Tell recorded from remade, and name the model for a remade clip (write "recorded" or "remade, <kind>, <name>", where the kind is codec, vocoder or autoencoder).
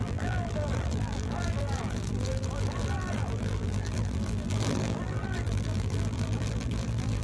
remade, vocoder, BigVGAN v2